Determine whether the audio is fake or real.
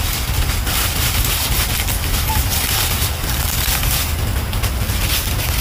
fake